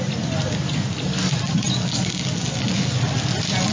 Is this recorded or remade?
recorded